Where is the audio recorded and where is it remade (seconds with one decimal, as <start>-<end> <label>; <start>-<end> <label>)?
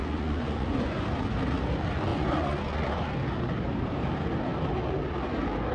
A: 0.0-1.0 remade; 1.0-2.1 recorded; 2.1-3.1 remade; 3.1-5.7 recorded